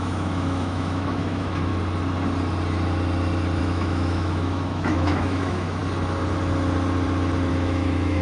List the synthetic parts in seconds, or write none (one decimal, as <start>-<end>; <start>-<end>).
0.0-1.7; 3.6-5.8; 7.5-8.2